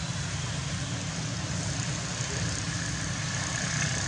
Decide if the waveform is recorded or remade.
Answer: recorded